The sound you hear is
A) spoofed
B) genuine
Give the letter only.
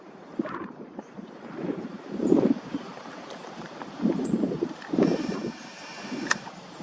A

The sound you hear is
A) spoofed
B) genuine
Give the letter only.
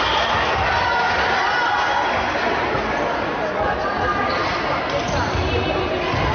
B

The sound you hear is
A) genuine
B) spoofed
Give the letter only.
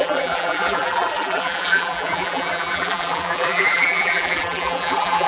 B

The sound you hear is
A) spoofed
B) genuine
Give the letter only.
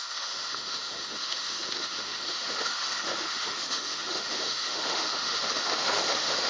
A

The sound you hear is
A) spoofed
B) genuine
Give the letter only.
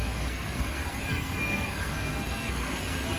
A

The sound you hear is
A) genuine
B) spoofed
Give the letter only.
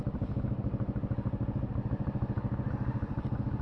A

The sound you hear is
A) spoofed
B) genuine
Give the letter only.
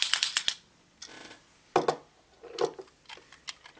B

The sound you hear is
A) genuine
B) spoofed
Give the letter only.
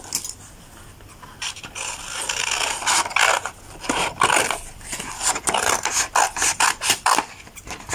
A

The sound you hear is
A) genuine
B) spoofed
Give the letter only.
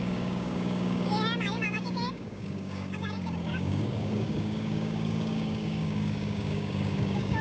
B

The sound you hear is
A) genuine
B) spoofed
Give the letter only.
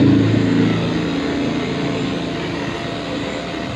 A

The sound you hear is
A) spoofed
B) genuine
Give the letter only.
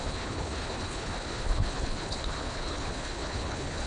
A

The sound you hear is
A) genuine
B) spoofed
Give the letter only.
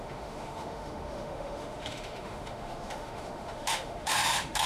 B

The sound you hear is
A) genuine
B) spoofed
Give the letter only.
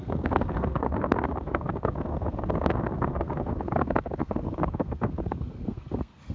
B